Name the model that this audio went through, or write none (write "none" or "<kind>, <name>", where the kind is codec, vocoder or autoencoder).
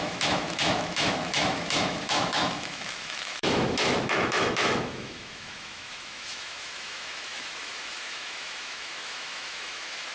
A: autoencoder, DAC-VAE